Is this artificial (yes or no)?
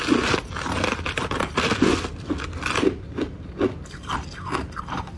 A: no